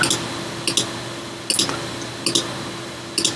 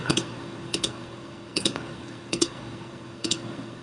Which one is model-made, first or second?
second